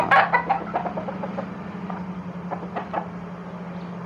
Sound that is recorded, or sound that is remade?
recorded